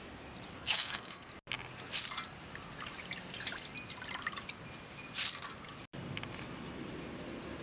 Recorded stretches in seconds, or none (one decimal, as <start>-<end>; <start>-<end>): 0.0-0.6; 1.3-7.6